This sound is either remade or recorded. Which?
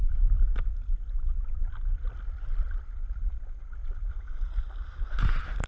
recorded